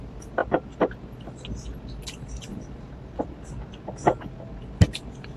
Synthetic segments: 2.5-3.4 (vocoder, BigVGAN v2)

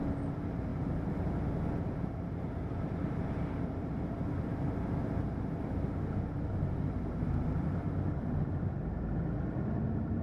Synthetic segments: none

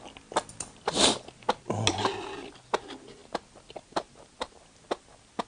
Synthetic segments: none

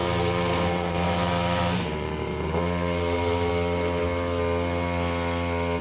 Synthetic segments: 0.0-3.5 (vocoder, BigVGAN v2)

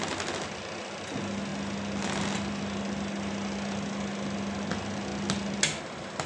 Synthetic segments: none

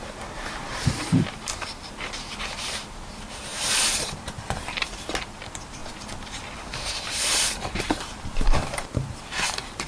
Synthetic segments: 0.0-5.8 (vocoder, BigVGAN v2); 6.9-9.9

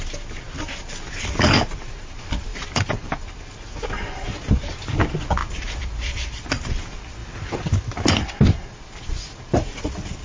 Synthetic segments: 2.5-3.0 (vocoder, BigVGAN v2); 5.4-6.4